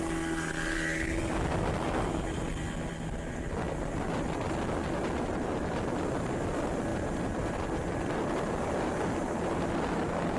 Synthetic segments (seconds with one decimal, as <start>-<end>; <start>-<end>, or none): 1.2-2.5; 3.9-4.6; 6.9-8.3